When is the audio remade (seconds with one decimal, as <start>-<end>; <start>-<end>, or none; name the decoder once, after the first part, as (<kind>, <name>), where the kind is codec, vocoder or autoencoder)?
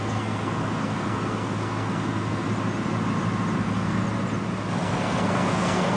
0.0-2.5 (codec, SNAC); 3.6-4.0; 4.7-6.0